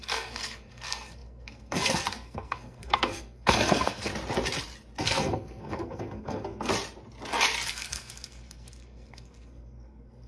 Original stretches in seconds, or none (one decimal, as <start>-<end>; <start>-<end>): 4.1-5.0; 6.7-7.7